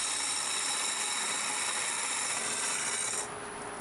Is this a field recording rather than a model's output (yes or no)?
yes